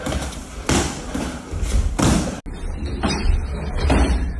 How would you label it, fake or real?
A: real